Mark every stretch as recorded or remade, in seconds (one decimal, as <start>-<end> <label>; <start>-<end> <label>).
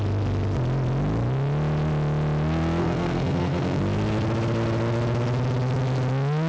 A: 0.0-2.8 recorded; 2.8-3.8 remade; 3.8-6.5 recorded